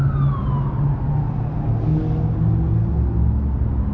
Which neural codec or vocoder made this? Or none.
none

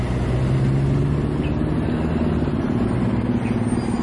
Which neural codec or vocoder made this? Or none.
none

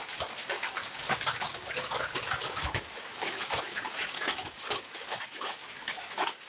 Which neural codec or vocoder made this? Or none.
codec, DAC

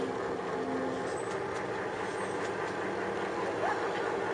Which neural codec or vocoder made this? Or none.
none